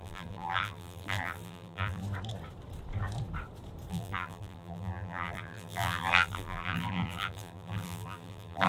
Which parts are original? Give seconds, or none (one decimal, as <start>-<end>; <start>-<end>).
2.0-3.9